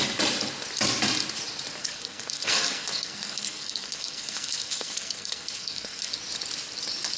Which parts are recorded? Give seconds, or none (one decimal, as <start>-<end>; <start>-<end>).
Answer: 0.0-1.8; 6.1-7.2